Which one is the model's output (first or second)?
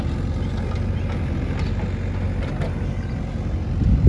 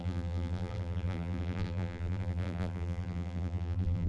second